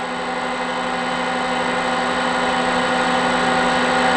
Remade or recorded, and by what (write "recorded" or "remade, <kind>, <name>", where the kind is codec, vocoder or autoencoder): recorded